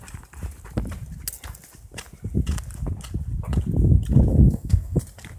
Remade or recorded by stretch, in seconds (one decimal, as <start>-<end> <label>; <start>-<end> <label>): 0.0-4.3 recorded; 4.3-5.0 remade; 5.0-5.4 recorded